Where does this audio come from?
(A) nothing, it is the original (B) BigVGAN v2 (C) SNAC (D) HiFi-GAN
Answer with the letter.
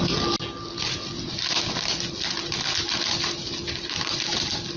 A